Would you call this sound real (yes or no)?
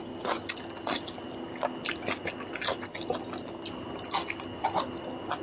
yes